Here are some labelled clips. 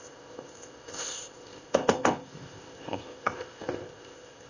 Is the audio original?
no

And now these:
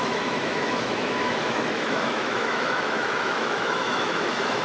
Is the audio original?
no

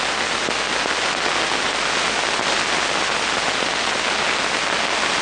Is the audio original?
yes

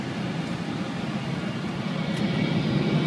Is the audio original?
yes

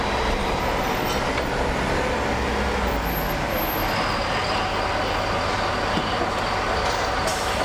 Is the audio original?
yes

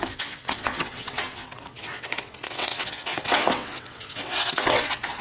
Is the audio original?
no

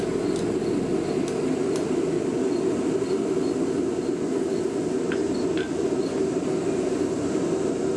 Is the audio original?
yes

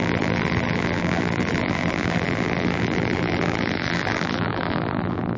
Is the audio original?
no